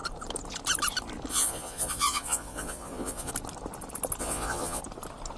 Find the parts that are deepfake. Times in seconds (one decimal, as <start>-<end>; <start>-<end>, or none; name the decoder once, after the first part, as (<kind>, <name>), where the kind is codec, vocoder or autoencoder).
1.3-3.3 (vocoder, Vocos); 4.2-4.8